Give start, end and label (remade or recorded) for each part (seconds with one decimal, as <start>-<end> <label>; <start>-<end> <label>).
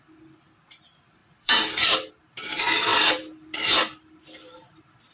0.0-1.2 recorded; 1.2-2.1 remade; 2.1-2.9 recorded; 2.9-5.1 remade